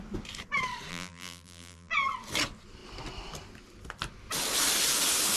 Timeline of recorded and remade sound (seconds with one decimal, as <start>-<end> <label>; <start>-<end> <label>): 0.0-0.9 recorded; 0.9-1.9 remade; 1.9-5.4 recorded